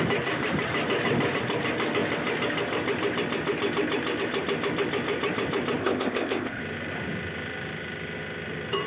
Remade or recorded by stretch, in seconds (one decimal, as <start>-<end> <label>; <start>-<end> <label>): 0.0-5.8 recorded; 5.8-6.6 remade; 6.6-8.9 recorded